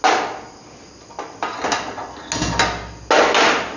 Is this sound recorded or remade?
recorded